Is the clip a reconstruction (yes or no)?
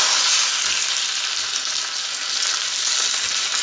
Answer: no